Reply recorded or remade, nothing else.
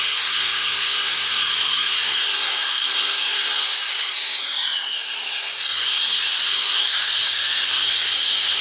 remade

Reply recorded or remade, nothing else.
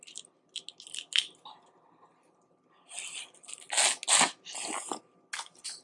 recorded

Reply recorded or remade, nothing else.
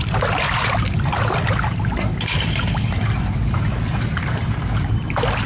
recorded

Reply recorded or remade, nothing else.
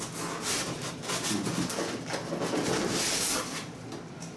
recorded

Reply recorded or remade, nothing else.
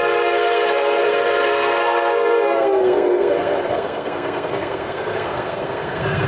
remade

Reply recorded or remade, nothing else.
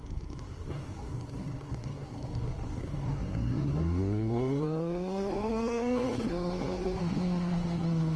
remade